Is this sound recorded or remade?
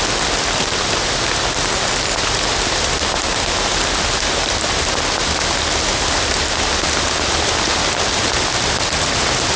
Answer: recorded